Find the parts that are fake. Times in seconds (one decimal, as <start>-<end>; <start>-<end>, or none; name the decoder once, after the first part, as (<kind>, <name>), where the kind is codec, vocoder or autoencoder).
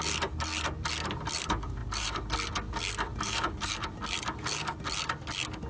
1.8-2.3 (vocoder, BigVGAN v2); 3.1-3.7